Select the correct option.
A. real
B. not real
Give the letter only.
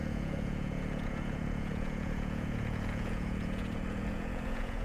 B